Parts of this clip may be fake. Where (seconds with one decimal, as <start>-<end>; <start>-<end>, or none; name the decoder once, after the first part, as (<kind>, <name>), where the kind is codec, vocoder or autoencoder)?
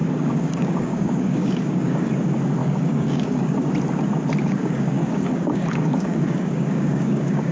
0.0-2.1 (codec, DAC); 2.6-3.7; 4.4-7.5